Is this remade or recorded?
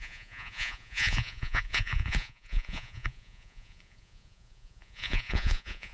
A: remade